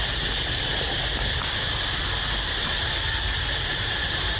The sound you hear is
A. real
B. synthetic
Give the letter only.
A